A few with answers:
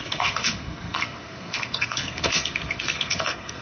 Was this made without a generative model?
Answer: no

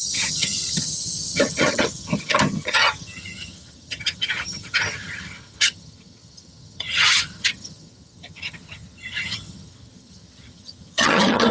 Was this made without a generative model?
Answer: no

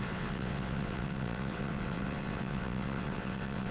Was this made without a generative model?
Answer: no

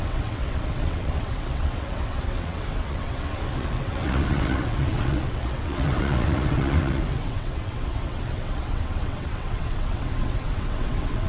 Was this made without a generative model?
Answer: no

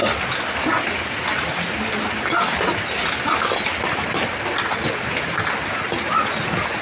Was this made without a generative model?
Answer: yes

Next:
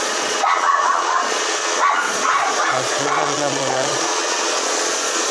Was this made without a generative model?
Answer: no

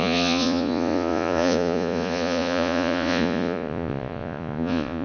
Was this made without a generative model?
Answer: no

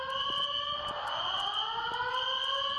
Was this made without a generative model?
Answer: yes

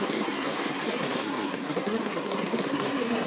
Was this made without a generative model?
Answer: no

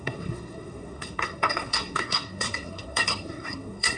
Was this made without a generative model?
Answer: no